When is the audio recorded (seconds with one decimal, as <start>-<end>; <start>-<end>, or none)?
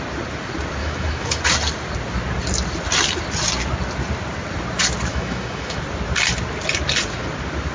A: 0.0-0.8; 1.4-5.1; 5.8-7.7